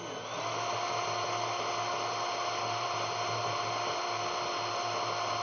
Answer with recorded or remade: recorded